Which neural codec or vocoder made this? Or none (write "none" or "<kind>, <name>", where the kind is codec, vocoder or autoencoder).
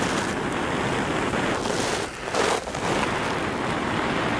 none